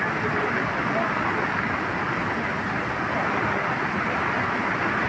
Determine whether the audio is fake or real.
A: real